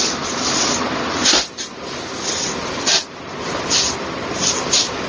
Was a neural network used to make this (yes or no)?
no